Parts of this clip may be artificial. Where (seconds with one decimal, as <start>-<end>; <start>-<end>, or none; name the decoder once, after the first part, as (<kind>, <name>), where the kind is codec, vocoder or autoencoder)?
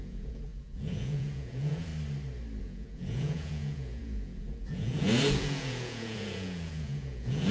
0.0-1.9 (vocoder, Vocos); 2.6-7.5